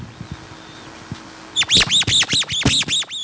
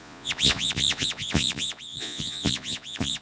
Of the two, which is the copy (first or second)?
second